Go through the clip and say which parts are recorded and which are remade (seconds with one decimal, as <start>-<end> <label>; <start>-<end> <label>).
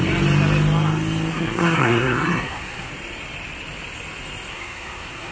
0.0-1.3 recorded; 1.3-2.9 remade; 2.9-4.5 recorded; 4.5-5.3 remade